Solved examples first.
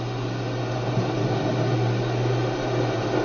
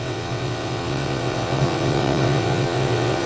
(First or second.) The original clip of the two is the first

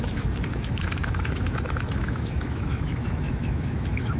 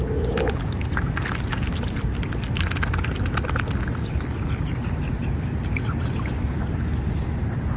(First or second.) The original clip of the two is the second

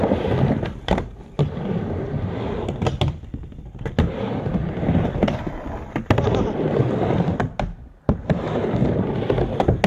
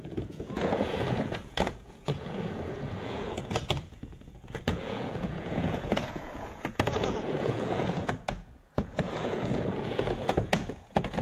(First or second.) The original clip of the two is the first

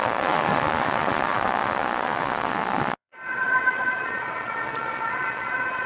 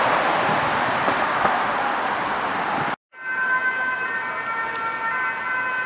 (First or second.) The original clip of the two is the second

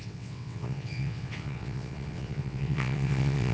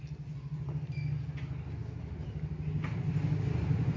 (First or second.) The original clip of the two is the second